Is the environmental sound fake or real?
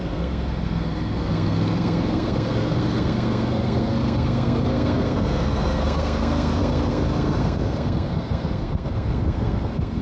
fake